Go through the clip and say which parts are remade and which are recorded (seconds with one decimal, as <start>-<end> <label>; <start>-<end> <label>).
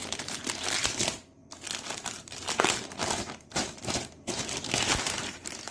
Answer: 0.0-1.4 remade; 1.4-1.9 recorded; 1.9-5.7 remade